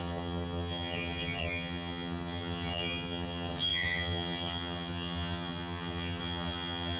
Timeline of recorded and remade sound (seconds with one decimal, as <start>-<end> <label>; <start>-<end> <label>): 0.0-7.0 remade